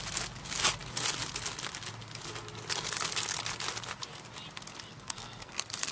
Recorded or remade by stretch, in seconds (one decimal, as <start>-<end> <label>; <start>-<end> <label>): 0.0-4.9 recorded; 4.9-5.9 remade